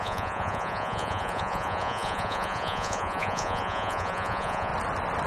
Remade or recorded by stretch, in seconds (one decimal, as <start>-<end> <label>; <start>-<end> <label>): 0.0-4.7 remade; 4.7-5.3 recorded